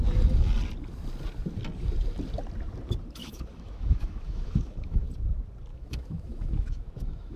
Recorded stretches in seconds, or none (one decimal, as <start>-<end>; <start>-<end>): 0.0-3.2; 5.1-5.7